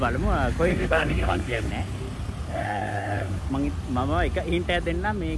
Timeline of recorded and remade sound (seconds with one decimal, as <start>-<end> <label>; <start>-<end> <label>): 0.0-0.7 recorded; 0.7-1.7 remade; 1.7-2.5 recorded; 2.5-3.4 remade; 3.4-5.4 recorded